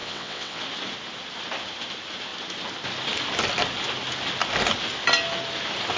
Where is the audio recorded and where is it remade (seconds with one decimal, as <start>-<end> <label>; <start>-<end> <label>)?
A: 0.0-0.6 remade; 0.6-6.0 recorded